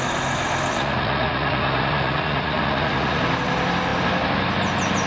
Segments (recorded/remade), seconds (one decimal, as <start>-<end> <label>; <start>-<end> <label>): 0.0-0.7 recorded; 0.7-3.2 remade; 3.2-5.1 recorded